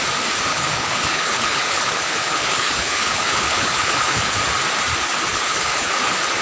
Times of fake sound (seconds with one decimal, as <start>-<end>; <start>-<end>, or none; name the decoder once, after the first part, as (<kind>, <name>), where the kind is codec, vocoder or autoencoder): 0.5-4.3 (codec, HILCodec); 5.3-5.9

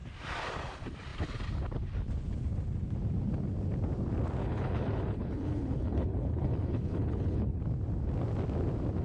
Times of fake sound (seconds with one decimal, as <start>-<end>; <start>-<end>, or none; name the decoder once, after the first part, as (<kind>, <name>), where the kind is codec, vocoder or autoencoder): 4.4-7.6 (codec, HILCodec)

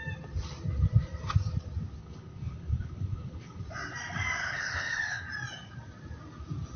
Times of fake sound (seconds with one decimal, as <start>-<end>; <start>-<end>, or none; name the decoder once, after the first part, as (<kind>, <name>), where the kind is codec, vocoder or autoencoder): 2.0-3.6 (codec, HILCodec); 4.4-5.2

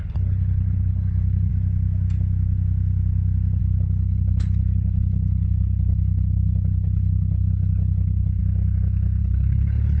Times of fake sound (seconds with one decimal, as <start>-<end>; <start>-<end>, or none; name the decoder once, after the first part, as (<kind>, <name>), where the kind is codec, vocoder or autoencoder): 0.0-1.5 (codec, HILCodec); 3.6-8.4; 9.2-10.0